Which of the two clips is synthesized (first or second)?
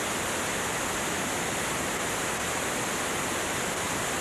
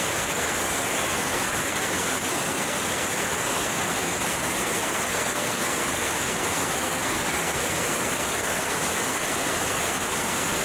second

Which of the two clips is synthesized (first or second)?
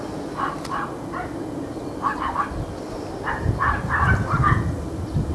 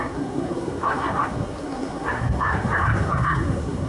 second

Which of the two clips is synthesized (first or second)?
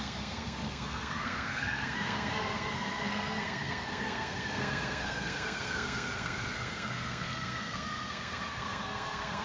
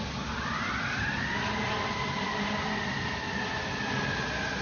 first